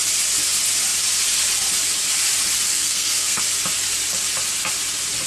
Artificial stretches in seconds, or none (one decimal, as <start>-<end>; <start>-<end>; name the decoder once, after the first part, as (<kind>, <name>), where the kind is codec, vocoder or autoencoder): 2.7-3.4 (codec, SNAC)